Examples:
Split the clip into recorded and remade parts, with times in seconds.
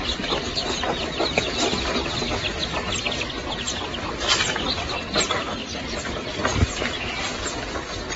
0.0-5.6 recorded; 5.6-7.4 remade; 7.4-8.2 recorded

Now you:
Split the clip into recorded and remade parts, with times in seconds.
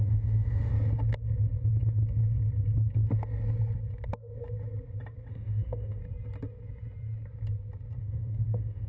0.0-0.7 remade; 0.7-5.3 recorded; 5.3-6.0 remade; 6.0-8.0 recorded; 8.0-8.9 remade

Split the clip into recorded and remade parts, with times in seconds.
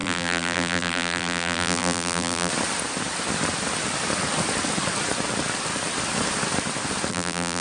0.0-2.5 remade; 2.5-7.1 recorded; 7.1-7.6 remade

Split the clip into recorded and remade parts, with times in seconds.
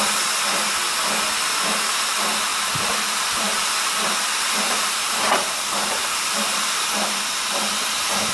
0.0-2.5 recorded; 2.5-7.2 remade; 7.2-8.3 recorded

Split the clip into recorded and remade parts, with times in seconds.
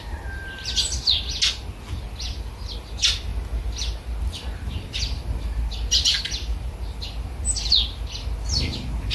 0.0-9.1 recorded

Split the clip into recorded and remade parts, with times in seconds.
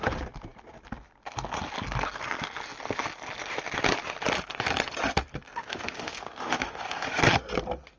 0.0-5.6 recorded; 5.6-7.2 remade; 7.2-8.0 recorded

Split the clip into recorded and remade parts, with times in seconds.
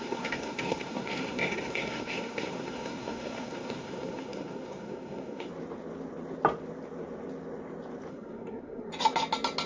0.0-5.5 remade; 5.5-8.1 recorded; 8.1-8.9 remade; 8.9-9.7 recorded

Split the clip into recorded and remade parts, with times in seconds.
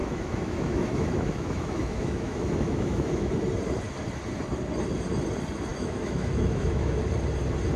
0.0-3.3 remade; 3.3-5.7 recorded; 5.7-7.0 remade; 7.0-7.8 recorded